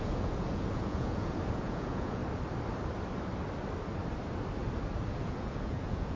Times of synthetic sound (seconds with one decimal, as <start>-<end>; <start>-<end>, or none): 0.0-2.2; 5.2-6.2